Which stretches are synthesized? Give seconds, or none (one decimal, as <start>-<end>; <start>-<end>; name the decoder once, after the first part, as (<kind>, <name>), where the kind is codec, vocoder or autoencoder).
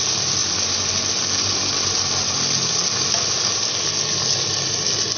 none